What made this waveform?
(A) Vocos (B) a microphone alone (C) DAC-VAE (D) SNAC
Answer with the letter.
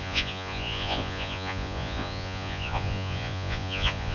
A